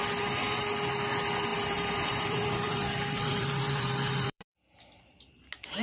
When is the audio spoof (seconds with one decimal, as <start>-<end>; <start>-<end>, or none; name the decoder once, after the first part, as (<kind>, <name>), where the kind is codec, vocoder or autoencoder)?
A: 1.5-5.0 (vocoder, BigVGAN v2)